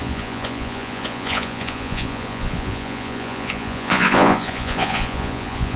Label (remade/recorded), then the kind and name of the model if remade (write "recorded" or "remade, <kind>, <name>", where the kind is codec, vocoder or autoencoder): remade, vocoder, Vocos